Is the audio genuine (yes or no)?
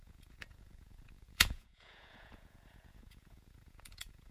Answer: no